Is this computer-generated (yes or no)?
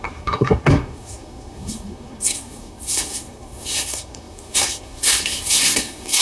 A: yes